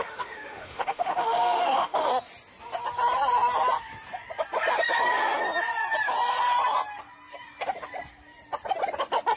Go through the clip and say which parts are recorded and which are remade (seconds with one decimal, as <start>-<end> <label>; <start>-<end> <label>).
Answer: 0.0-2.1 remade; 2.1-9.4 recorded